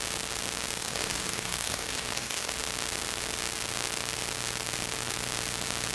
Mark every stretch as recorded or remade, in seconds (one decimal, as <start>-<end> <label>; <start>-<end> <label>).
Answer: 0.0-0.8 recorded; 0.8-2.5 remade; 2.5-5.9 recorded